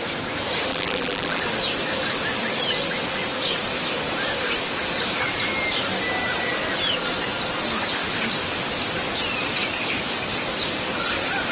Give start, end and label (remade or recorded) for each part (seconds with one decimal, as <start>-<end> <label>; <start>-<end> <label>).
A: 0.0-0.7 recorded; 0.7-1.4 remade; 1.4-11.5 recorded